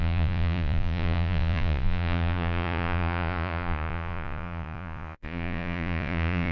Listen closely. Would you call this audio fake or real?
fake